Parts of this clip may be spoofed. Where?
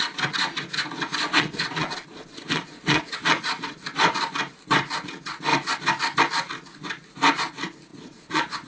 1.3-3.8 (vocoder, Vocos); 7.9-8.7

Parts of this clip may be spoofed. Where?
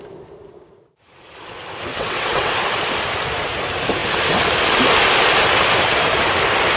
1.9-2.5 (vocoder, WaveNeXt)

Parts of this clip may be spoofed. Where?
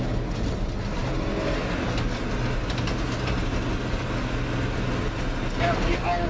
none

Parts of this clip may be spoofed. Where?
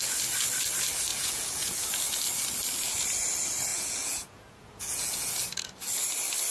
1.1-1.8 (vocoder, Vocos); 3.7-5.3